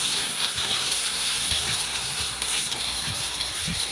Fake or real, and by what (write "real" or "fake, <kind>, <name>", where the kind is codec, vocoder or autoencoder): fake, codec, SNAC